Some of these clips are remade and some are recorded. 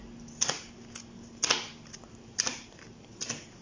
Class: recorded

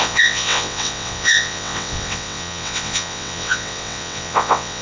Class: remade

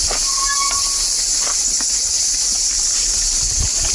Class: recorded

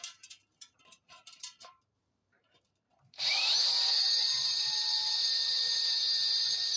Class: remade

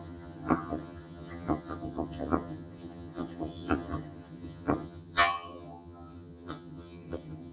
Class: remade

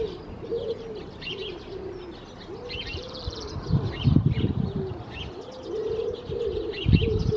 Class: recorded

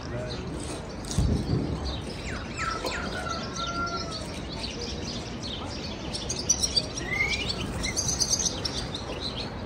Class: recorded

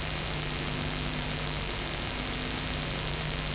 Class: remade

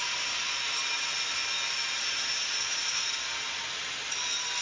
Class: recorded